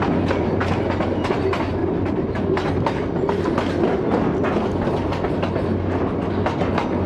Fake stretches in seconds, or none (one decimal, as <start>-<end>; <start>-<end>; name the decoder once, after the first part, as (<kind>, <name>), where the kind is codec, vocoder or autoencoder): none